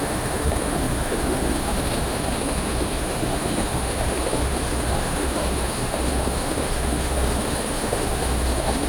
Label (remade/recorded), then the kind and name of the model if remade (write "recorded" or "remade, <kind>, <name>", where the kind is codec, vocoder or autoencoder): remade, autoencoder, DAC-VAE